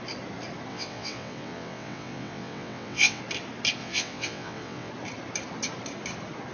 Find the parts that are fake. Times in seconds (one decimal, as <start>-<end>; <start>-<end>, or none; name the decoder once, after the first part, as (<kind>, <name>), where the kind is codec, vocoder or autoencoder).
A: 0.7-3.2 (vocoder, WaveNeXt); 3.8-4.9